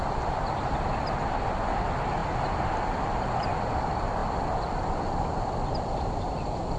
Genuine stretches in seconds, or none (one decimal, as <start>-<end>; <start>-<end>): 0.0-6.8